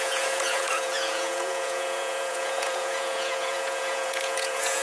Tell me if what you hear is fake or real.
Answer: fake